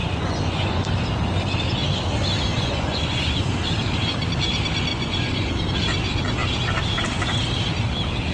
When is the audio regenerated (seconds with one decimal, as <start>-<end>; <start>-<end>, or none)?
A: 0.0-0.9; 2.5-3.5; 4.9-5.5

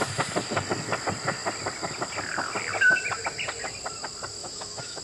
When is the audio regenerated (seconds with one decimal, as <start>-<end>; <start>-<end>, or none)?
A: 4.4-5.0

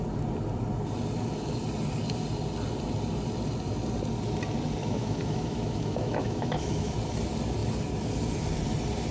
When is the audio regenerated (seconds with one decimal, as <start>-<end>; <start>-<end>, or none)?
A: 4.8-6.9

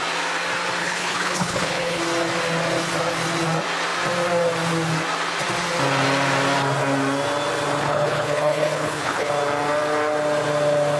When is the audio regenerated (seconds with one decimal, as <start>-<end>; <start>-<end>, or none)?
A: 0.8-2.0; 7.8-9.3